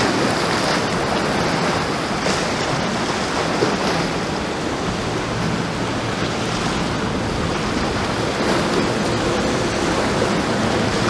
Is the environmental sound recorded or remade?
recorded